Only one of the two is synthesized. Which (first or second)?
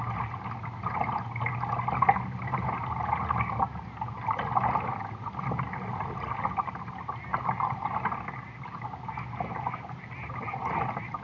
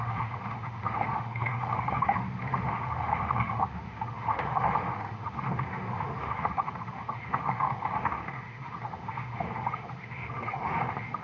second